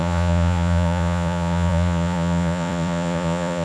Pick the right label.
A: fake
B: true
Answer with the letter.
A